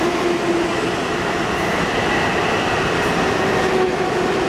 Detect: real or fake real